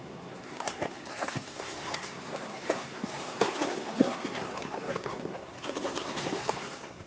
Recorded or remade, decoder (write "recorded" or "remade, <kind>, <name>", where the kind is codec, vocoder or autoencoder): remade, codec, SNAC